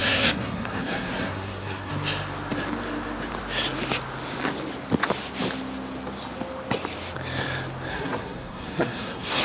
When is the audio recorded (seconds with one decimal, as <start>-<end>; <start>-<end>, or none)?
1.9-7.9